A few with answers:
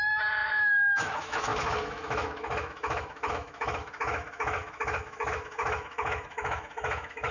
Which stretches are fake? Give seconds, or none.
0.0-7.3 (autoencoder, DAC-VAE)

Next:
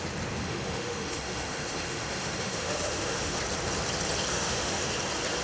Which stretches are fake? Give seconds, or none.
0.4-3.4 (autoencoder, DAC-VAE); 4.3-4.9

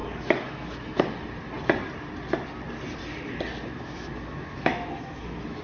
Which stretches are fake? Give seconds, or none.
0.0-1.0 (autoencoder, DAC-VAE); 3.7-5.6

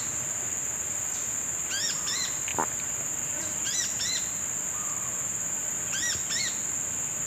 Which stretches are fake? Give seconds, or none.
none